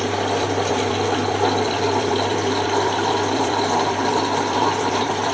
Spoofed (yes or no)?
yes